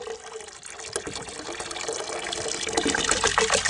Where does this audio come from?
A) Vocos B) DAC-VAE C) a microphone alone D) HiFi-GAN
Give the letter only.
C